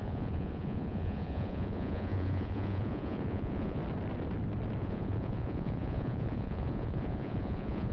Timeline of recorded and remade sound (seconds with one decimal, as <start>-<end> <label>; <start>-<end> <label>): 0.0-3.8 remade; 3.8-4.8 recorded; 4.8-7.9 remade